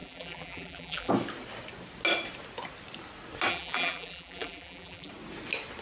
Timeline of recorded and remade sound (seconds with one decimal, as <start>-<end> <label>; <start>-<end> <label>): 0.0-1.1 remade; 1.1-3.5 recorded; 3.5-5.1 remade; 5.1-5.8 recorded